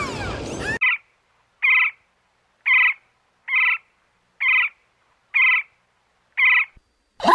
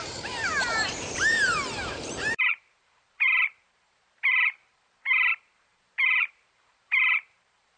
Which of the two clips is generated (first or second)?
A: second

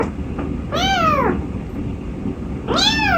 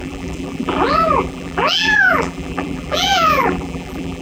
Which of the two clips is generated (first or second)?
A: second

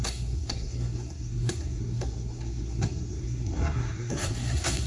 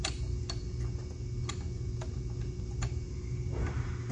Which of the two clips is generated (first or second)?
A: first